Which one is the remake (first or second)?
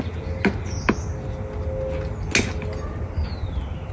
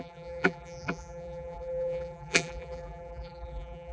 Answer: second